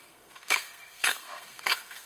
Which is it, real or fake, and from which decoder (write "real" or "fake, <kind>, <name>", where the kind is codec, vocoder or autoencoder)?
fake, codec, SNAC